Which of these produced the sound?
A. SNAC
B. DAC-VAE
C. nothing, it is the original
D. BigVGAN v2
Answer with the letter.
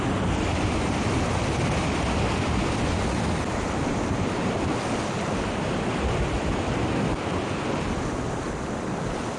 C